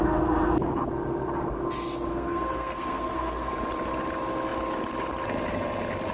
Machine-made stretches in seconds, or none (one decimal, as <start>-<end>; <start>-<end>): 2.1-3.5